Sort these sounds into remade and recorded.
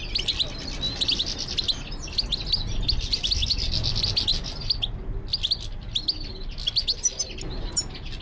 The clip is recorded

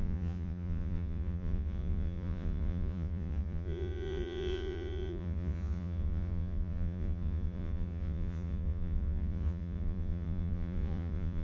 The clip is remade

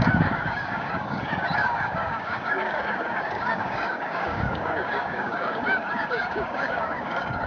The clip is remade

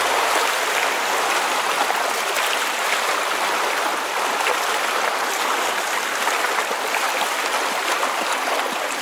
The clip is remade